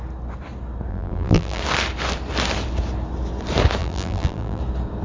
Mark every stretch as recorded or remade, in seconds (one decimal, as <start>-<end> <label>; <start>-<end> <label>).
0.0-0.9 recorded; 0.9-1.6 remade; 1.6-3.8 recorded; 3.8-4.6 remade; 4.6-5.0 recorded